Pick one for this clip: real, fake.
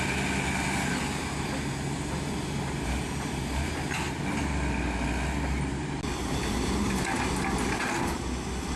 real